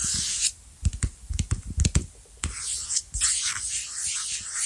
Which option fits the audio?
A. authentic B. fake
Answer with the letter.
A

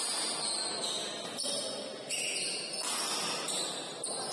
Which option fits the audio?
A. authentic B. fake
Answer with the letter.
A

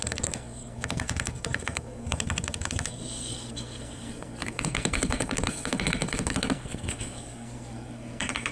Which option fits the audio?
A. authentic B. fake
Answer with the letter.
B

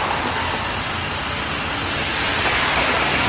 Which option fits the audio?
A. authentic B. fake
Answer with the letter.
A